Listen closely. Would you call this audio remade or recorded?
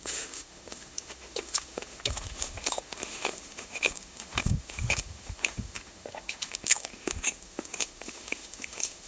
remade